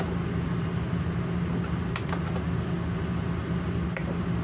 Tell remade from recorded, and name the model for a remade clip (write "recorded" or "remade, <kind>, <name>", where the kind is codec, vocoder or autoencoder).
recorded